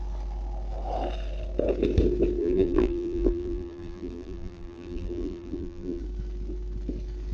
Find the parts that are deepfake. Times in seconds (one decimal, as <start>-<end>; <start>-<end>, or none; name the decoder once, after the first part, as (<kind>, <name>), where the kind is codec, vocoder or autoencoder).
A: 2.4-6.0 (vocoder, BigVGAN v2)